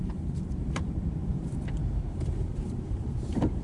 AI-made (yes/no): yes